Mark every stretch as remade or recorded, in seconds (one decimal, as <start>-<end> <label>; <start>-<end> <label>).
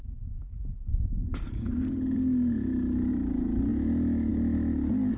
0.0-0.9 recorded; 0.9-3.1 remade; 3.1-5.2 recorded